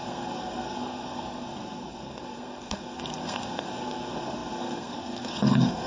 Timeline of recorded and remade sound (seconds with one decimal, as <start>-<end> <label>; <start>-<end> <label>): 0.0-5.9 remade